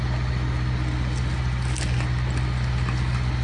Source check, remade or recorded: recorded